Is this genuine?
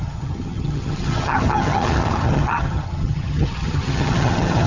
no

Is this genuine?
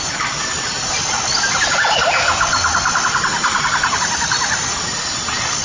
yes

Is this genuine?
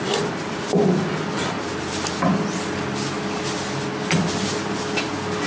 yes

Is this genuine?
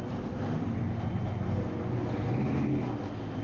yes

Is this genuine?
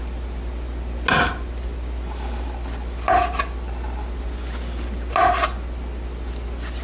yes